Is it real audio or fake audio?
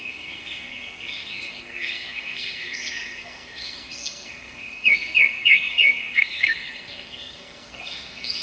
fake